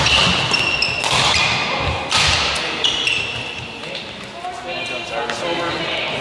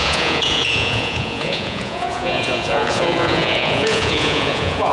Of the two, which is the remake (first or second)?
second